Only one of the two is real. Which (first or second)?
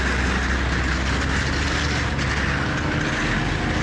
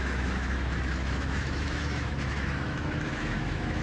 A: first